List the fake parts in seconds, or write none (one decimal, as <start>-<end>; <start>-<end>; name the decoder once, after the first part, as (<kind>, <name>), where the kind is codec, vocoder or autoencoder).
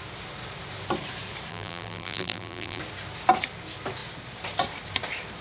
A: 1.5-2.8 (vocoder, BigVGAN v2)